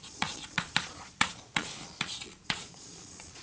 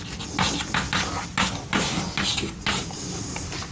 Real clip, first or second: second